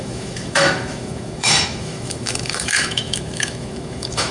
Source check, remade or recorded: remade